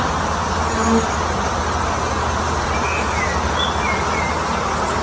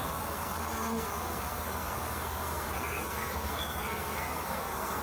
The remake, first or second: second